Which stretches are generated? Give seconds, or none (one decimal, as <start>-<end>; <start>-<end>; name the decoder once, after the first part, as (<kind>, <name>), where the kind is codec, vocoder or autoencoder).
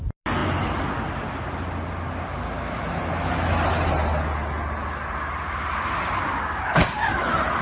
none